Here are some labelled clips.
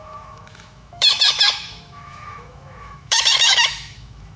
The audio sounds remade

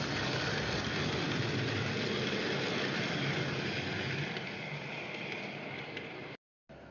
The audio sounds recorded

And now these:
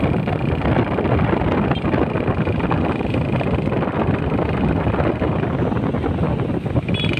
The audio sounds recorded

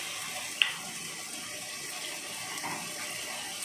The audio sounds recorded